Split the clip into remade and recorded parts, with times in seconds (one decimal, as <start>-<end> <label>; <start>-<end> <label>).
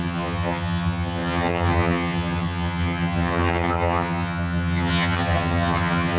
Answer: 0.0-6.2 remade